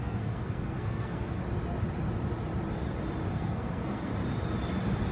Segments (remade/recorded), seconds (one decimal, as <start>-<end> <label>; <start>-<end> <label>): 0.0-1.4 remade; 1.4-3.3 recorded; 3.3-4.1 remade; 4.1-5.1 recorded